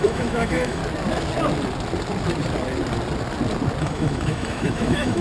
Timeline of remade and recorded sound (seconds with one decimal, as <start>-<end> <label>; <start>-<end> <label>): 0.0-0.8 remade; 0.8-3.8 recorded; 3.8-5.2 remade